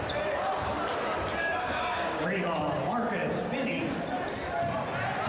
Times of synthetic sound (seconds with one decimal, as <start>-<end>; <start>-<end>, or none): 1.4-2.6